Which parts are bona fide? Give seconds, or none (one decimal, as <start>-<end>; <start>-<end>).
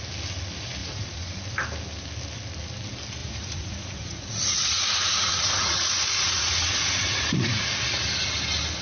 0.0-0.8; 1.4-3.2; 7.6-8.8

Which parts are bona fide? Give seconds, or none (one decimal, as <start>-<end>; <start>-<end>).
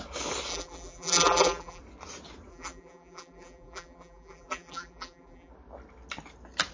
0.0-0.5; 1.8-2.5; 5.5-6.7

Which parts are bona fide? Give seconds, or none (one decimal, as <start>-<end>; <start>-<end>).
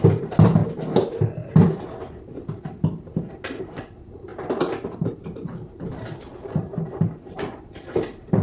0.6-3.6; 4.3-4.9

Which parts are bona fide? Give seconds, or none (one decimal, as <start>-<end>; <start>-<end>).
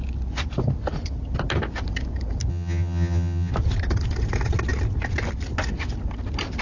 0.0-2.5; 3.5-6.6